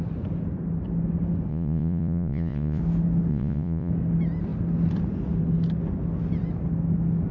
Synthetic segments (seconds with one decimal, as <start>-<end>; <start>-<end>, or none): 1.5-2.8; 3.3-3.9